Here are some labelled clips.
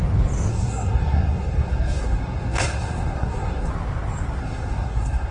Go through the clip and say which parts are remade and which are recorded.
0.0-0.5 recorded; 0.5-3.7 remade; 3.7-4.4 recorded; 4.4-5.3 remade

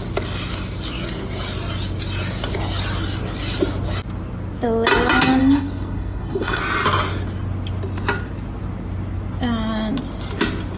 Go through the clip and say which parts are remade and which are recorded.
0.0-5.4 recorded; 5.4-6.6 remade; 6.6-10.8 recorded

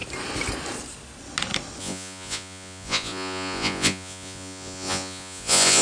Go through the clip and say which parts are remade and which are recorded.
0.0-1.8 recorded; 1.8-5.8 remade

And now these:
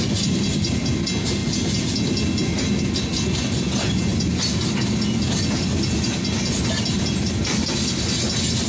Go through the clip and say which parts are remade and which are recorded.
0.0-8.7 recorded

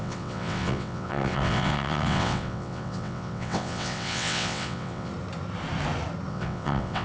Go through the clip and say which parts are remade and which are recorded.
0.0-5.1 remade; 5.1-6.3 recorded; 6.3-7.0 remade

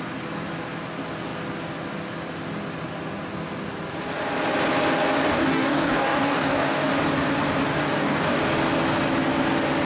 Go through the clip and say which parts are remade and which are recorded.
0.0-5.3 recorded; 5.3-6.9 remade; 6.9-7.8 recorded; 7.8-8.4 remade; 8.4-9.9 recorded

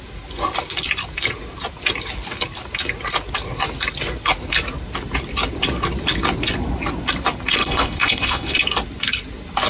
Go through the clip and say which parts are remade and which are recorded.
0.0-7.6 recorded; 7.6-8.6 remade; 8.6-9.7 recorded

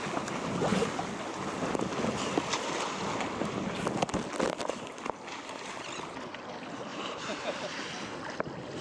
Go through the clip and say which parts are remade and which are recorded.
0.0-6.9 recorded; 6.9-7.7 remade; 7.7-8.8 recorded